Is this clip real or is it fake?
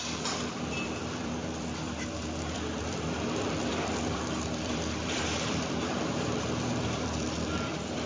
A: fake